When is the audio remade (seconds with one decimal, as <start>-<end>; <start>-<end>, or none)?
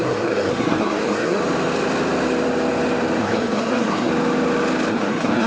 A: 0.0-1.4; 3.2-4.1; 4.9-5.5